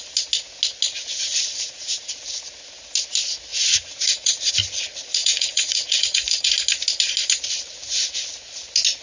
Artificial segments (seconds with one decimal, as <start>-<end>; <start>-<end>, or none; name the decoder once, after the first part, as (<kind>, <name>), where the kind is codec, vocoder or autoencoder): 1.1-2.1 (vocoder, Vocos); 3.5-4.5; 5.2-6.5